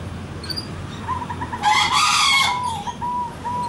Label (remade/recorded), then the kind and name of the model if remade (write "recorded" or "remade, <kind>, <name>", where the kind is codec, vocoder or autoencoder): remade, vocoder, BigVGAN v2